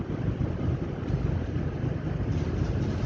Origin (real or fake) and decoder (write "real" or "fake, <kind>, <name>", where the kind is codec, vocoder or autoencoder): real